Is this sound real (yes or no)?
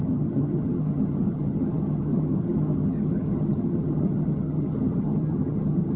no